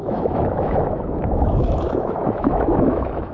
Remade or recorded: remade